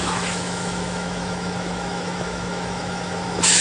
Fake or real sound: fake